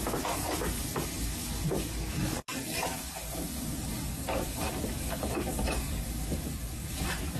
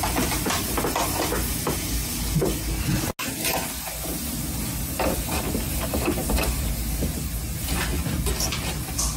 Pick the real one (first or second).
second